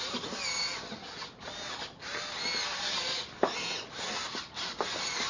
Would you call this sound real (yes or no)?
yes